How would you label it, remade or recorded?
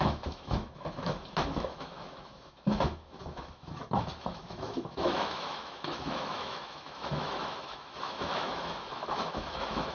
remade